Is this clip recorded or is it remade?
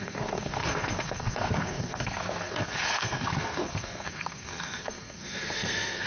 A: remade